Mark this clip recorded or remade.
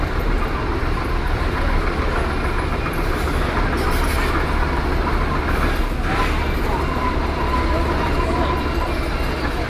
recorded